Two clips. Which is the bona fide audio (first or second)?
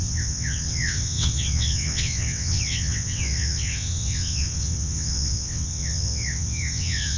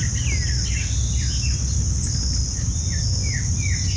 second